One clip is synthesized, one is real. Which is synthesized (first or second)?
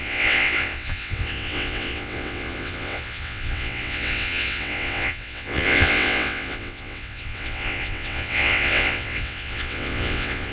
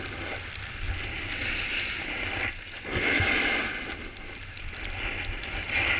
first